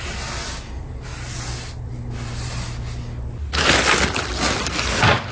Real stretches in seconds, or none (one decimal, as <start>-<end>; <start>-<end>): 0.0-5.3